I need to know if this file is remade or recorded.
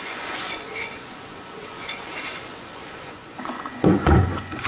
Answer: remade